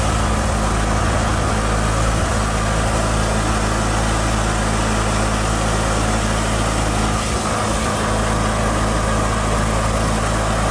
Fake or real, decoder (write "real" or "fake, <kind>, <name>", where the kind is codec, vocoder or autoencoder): real